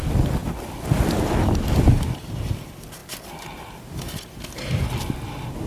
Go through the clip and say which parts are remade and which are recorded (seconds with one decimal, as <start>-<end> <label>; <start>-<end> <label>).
0.0-0.4 recorded; 0.4-2.4 remade; 2.4-5.7 recorded